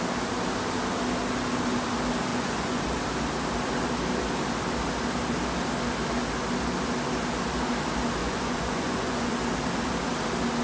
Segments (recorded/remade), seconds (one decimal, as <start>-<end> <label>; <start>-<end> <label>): 0.0-2.3 recorded; 2.3-2.8 remade; 2.8-8.2 recorded; 8.2-9.3 remade; 9.3-10.6 recorded